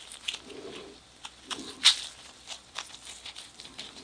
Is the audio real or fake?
fake